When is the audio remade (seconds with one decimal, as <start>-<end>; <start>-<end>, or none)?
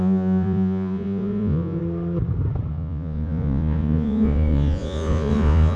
0.0-1.8; 2.7-5.8